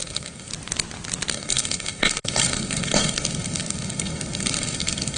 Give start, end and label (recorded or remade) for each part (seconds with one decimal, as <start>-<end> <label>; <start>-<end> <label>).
0.0-0.5 remade; 0.5-1.3 recorded; 1.3-5.2 remade